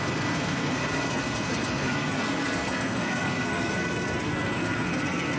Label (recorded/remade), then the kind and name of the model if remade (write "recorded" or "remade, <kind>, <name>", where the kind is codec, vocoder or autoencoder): remade, codec, SNAC